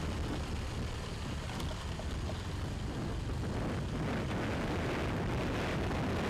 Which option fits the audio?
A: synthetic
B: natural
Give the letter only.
B